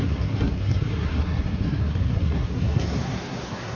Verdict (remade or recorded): remade